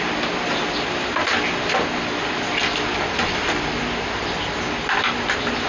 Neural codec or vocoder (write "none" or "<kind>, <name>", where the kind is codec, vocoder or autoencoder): none